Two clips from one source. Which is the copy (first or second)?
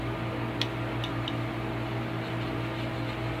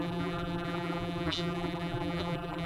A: second